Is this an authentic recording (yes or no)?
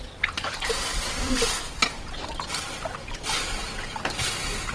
yes